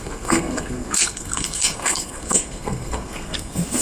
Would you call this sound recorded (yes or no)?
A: no